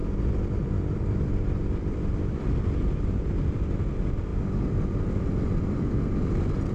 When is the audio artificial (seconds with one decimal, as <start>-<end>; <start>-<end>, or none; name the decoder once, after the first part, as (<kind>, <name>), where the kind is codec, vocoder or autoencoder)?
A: 0.0-3.3 (vocoder, BigVGAN v2)